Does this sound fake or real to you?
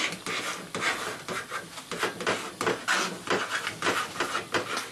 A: real